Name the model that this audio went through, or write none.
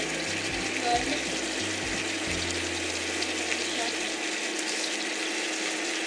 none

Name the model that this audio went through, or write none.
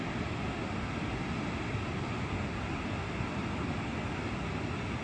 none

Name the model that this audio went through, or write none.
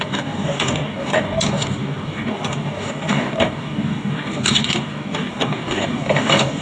codec, DAC